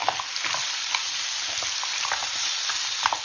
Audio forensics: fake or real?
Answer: real